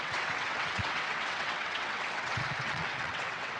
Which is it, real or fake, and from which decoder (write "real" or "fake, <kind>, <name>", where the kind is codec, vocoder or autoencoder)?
fake, vocoder, WaveNeXt